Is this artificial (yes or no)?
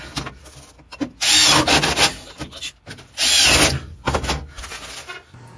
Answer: no